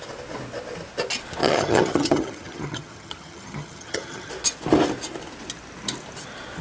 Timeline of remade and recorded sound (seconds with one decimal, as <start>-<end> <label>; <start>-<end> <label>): 0.0-1.4 recorded; 1.4-4.3 remade; 4.3-6.6 recorded